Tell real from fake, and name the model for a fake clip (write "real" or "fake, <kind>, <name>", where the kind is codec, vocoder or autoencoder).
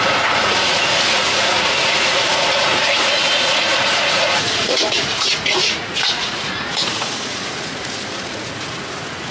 fake, vocoder, Vocos